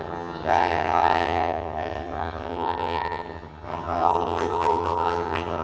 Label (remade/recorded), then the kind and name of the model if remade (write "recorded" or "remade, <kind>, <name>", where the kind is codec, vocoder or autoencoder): remade, vocoder, HiFi-GAN